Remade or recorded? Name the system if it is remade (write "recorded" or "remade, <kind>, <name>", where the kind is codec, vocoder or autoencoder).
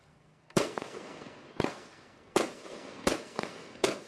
remade, codec, SNAC